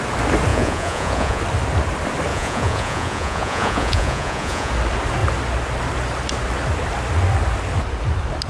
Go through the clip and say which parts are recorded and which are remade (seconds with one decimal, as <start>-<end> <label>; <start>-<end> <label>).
0.0-0.5 recorded; 0.5-1.4 remade; 1.4-2.3 recorded; 2.3-4.7 remade; 4.7-8.5 recorded